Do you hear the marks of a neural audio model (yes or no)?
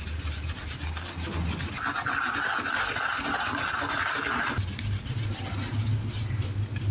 no